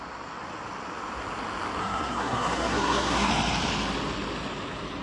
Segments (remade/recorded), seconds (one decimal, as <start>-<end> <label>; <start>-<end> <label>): 0.0-1.8 recorded; 1.8-3.3 remade; 3.3-5.0 recorded